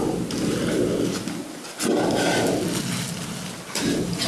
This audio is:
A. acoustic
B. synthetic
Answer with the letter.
A